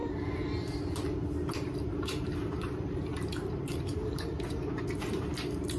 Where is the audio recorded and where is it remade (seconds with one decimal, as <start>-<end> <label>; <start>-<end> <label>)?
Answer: 0.0-1.5 recorded; 1.5-5.8 remade